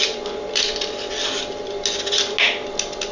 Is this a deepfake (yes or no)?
no